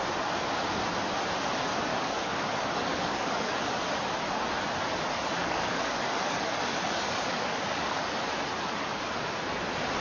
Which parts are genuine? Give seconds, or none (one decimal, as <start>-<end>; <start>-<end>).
0.0-1.9; 3.6-5.4; 8.0-10.0